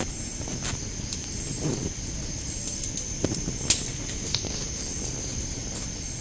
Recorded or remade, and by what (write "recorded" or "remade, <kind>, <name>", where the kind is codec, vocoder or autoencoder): recorded